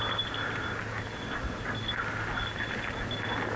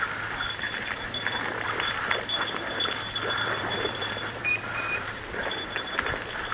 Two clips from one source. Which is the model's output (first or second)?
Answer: second